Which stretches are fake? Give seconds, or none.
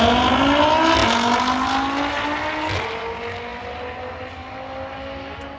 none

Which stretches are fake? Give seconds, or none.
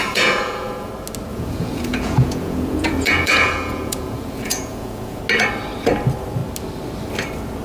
0.0-0.9 (vocoder, Vocos); 1.3-5.2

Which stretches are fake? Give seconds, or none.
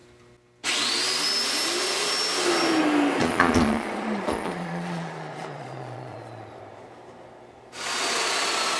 3.2-6.6 (vocoder, Vocos)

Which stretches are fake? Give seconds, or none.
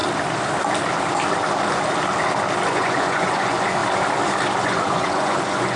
2.7-3.8 (vocoder, Vocos); 4.6-5.8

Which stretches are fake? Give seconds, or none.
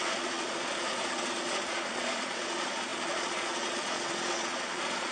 0.0-5.1 (vocoder, Vocos)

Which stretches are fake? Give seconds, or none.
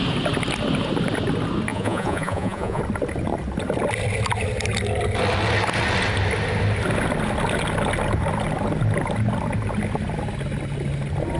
1.7-2.8 (vocoder, Vocos)